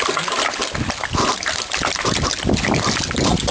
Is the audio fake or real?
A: real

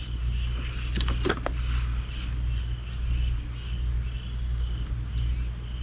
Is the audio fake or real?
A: real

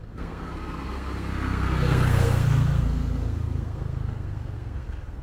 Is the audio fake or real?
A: fake